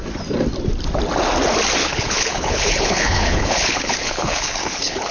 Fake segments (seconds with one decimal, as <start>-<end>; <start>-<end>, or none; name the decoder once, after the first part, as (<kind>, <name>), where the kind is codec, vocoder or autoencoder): 1.8-5.1 (codec, HILCodec)

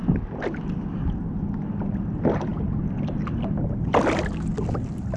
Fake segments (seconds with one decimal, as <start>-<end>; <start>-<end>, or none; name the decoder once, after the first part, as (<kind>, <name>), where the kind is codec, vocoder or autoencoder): none

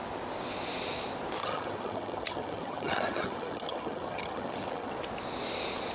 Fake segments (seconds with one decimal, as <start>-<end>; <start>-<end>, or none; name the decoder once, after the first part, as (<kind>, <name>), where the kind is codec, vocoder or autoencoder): 1.4-4.9 (vocoder, HiFi-GAN)

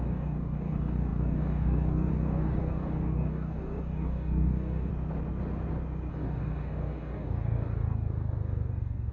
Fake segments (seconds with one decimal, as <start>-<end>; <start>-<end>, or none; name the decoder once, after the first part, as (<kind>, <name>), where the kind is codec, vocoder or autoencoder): 0.0-4.9 (codec, DAC); 6.1-9.1

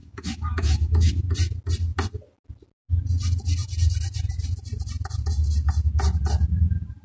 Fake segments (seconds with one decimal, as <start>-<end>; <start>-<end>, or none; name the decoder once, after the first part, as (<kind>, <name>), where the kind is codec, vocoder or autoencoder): 0.0-1.1 (autoencoder, DAC-VAE)

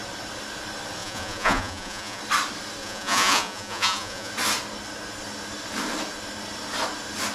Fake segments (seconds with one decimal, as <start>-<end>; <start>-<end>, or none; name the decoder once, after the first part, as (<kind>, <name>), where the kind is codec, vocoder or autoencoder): 1.0-2.2 (vocoder, Vocos); 2.8-4.3